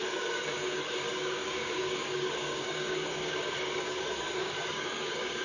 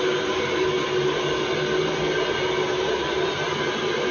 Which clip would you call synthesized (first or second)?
first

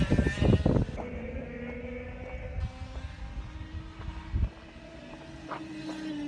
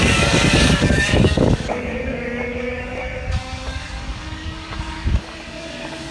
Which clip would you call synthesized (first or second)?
second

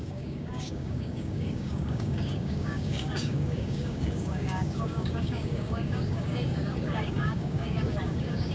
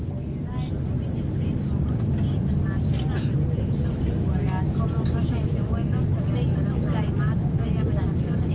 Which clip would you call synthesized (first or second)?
first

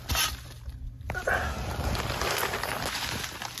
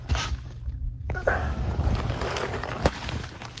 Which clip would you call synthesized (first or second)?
second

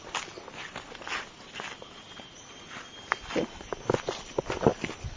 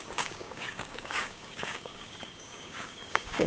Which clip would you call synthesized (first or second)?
second